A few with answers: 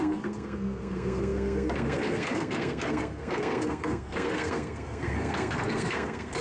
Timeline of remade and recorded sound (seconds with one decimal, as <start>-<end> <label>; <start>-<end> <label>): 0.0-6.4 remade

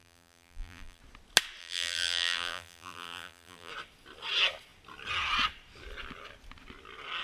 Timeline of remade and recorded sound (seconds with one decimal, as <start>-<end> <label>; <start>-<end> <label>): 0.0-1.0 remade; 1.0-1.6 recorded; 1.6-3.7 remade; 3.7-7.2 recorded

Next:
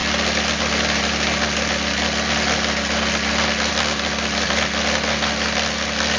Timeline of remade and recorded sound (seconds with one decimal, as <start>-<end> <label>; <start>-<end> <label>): 0.0-6.2 recorded